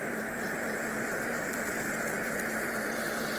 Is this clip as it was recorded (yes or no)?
yes